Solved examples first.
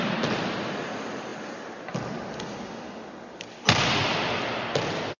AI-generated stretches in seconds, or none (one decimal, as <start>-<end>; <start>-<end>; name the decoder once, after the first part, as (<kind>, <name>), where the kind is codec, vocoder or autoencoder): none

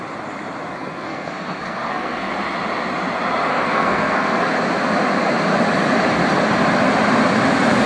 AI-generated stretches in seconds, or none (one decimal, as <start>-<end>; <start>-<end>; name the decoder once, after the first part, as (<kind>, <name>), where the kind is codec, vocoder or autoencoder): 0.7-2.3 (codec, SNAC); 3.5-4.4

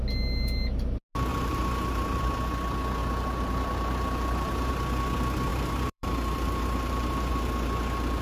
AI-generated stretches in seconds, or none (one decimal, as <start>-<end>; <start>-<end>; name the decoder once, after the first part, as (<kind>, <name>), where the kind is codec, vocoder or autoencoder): 1.3-2.2 (vocoder, BigVGAN v2); 3.0-4.7; 5.5-7.3

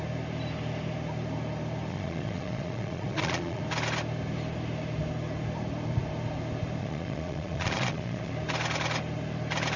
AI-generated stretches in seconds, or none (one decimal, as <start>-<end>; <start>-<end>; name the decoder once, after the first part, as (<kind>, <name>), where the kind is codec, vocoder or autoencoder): 1.9-3.6 (vocoder, Vocos); 6.8-8.3

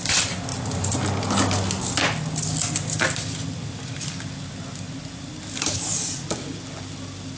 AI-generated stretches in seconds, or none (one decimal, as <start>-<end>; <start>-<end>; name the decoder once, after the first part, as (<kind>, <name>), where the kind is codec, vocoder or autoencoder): none